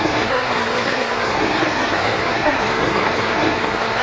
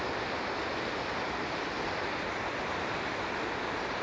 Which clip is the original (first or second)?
second